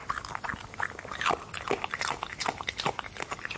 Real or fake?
real